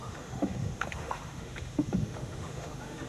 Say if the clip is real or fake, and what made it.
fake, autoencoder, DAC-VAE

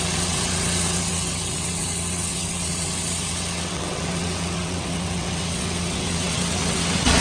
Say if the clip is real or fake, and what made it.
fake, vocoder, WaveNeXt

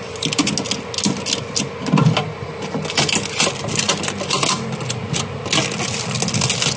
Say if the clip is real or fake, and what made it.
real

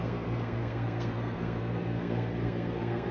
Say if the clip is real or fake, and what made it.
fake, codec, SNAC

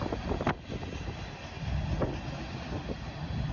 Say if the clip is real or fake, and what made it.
real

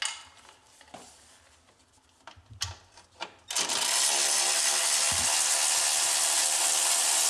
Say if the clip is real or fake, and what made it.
real